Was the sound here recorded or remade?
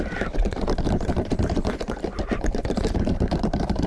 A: remade